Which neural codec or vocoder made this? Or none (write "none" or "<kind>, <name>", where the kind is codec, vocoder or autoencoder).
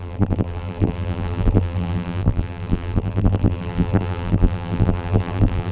vocoder, BigVGAN v2